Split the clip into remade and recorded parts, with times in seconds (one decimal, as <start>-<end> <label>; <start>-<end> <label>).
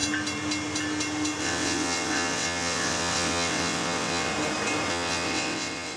0.0-1.4 recorded; 1.4-4.3 remade; 4.3-4.9 recorded; 4.9-6.0 remade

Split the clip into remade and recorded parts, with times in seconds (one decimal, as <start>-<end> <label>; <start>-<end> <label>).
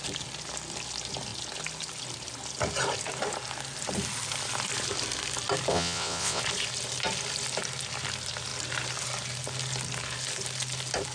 0.0-5.7 recorded; 5.7-6.4 remade; 6.4-11.1 recorded